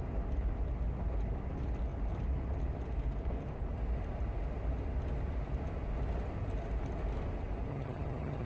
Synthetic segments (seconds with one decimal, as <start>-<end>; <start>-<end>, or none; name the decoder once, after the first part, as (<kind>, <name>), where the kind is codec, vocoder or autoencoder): 7.7-8.5 (vocoder, HiFi-GAN)